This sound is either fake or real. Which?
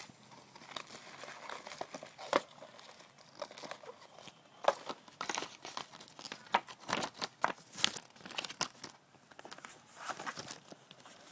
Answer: real